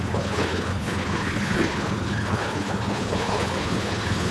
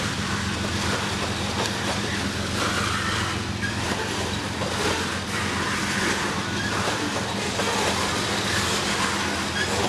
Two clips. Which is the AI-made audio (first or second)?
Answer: first